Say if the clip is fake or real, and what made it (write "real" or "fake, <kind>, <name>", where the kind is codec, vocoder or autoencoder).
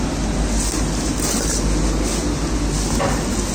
real